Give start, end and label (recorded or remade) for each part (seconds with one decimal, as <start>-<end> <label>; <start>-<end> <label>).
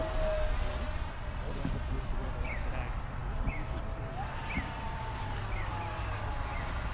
0.0-0.7 recorded; 0.7-2.4 remade; 2.4-3.2 recorded; 3.2-5.7 remade; 5.7-6.9 recorded